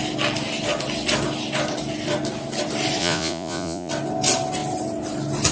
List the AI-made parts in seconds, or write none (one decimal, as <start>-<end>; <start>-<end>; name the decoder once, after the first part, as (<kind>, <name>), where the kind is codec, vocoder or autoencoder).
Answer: 3.0-3.9 (vocoder, Vocos)